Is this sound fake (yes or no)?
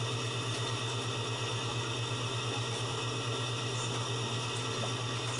no